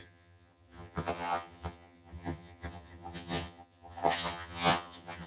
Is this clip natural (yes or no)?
no